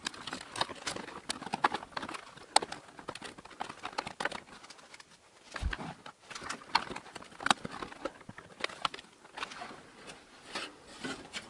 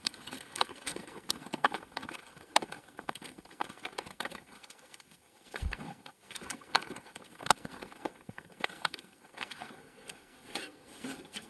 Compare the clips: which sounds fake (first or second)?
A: second